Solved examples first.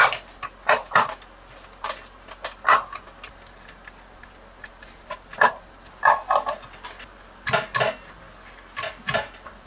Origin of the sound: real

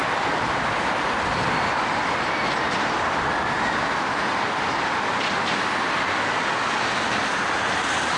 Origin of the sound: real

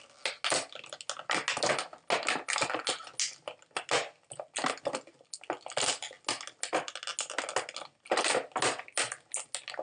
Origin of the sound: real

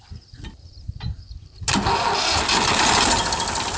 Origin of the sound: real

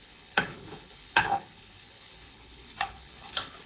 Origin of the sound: fake